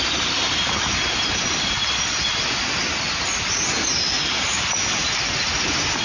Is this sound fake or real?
real